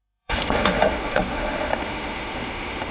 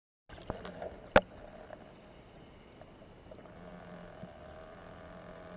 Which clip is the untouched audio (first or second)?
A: second